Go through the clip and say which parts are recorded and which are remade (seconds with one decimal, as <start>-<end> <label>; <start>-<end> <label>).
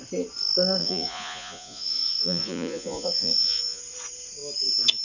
0.0-0.8 recorded; 0.8-3.8 remade; 3.8-5.0 recorded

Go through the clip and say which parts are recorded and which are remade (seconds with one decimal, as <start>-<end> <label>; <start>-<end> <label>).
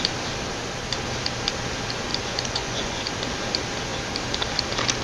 0.0-2.1 recorded; 2.1-3.0 remade; 3.0-5.0 recorded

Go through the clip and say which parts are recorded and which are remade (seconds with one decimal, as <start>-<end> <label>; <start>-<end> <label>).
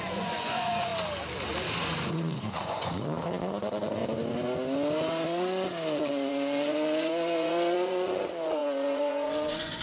0.0-0.9 remade; 0.9-1.8 recorded; 1.8-4.0 remade; 4.0-5.1 recorded; 5.1-9.8 remade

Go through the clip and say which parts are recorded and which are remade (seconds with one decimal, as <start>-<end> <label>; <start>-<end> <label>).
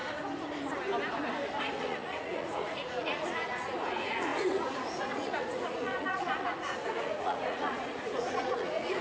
0.0-1.6 recorded; 1.6-9.0 remade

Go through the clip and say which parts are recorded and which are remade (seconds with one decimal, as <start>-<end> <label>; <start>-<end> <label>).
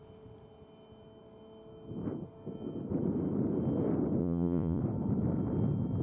0.0-4.2 recorded; 4.2-4.8 remade; 4.8-6.0 recorded